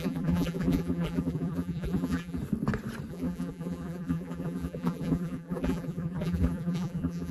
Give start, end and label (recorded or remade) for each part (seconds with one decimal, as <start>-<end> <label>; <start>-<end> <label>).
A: 0.0-2.4 remade; 2.4-3.1 recorded; 3.1-7.3 remade